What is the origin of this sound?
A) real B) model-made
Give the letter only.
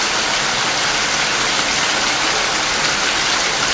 A